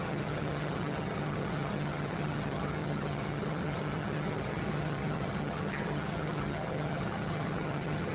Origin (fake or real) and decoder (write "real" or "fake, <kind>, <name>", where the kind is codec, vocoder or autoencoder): fake, vocoder, HiFi-GAN